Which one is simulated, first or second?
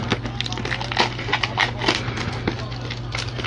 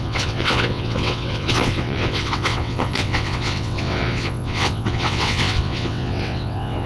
second